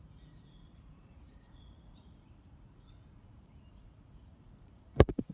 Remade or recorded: remade